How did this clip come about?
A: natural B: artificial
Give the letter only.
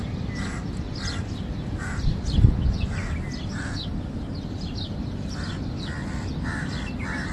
A